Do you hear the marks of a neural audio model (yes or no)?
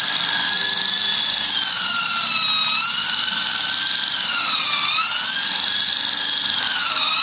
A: no